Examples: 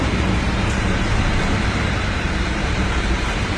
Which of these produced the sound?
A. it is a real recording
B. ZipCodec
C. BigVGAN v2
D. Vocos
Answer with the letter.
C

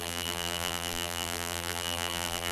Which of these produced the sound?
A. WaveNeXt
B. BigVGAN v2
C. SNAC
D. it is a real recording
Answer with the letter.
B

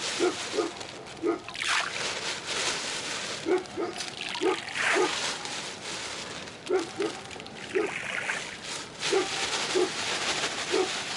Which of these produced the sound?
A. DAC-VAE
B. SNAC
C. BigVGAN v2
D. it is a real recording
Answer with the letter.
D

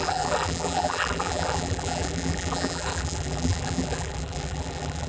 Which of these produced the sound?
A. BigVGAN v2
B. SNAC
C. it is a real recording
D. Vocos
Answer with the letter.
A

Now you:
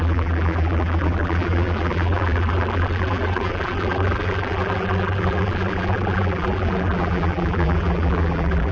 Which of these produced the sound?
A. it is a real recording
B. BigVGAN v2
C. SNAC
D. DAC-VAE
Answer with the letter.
B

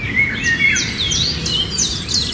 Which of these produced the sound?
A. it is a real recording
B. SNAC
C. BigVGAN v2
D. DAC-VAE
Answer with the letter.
A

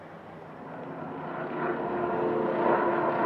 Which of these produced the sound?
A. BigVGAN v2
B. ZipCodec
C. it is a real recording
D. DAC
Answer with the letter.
C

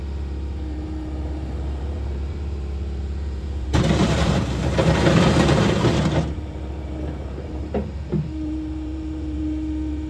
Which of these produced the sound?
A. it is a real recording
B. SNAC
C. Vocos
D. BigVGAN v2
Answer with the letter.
D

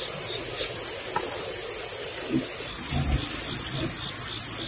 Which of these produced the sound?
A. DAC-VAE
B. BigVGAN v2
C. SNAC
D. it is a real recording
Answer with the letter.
D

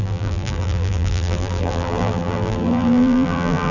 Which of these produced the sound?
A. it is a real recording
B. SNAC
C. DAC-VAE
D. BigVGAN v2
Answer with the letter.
D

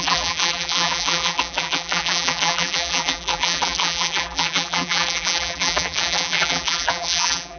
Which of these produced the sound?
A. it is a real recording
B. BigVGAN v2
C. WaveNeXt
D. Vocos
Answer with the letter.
B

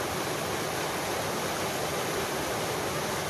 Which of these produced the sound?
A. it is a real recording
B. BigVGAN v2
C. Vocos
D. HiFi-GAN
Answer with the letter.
A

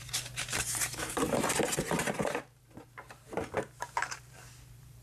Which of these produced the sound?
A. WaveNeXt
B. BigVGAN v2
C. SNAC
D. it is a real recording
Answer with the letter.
B